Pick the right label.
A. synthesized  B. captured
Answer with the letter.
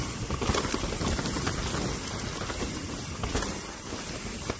B